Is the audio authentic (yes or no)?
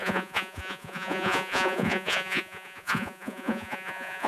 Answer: no